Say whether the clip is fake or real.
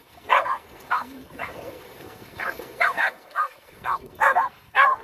fake